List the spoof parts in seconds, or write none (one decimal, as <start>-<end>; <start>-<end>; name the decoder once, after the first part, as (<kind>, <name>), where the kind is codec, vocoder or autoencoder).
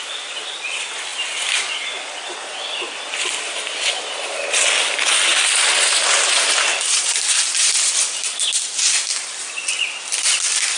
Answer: 1.1-2.6 (vocoder, BigVGAN v2); 5.3-5.9